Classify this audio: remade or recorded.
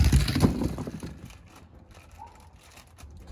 recorded